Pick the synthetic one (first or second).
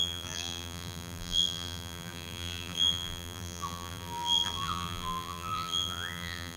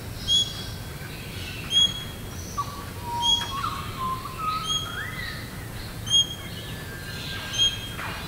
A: first